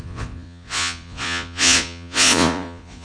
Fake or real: fake